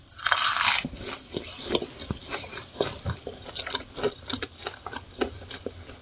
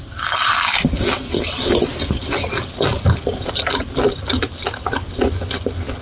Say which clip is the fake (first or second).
first